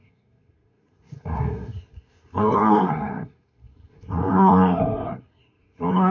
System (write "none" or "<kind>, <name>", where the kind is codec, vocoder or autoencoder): codec, SNAC